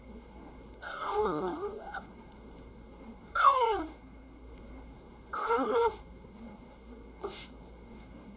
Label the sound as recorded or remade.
remade